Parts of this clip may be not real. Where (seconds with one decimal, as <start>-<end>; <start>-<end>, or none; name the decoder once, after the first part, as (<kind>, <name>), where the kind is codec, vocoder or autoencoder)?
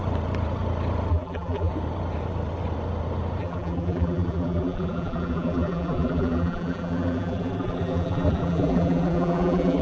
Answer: 1.1-1.7 (vocoder, BigVGAN v2); 3.4-9.8